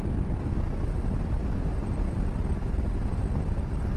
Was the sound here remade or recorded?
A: recorded